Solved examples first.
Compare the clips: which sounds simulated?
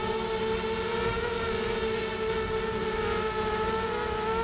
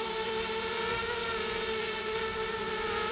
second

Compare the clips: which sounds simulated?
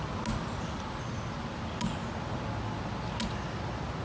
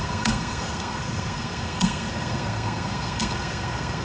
second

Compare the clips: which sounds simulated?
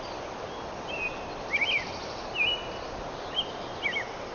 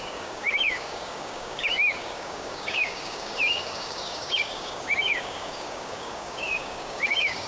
second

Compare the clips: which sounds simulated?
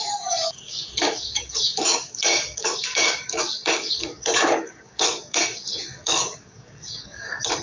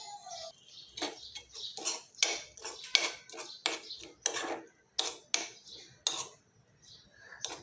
first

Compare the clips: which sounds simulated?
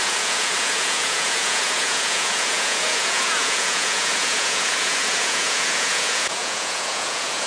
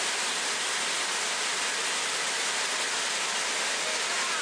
first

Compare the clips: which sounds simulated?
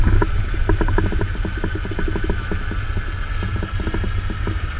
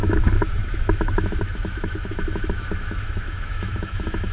second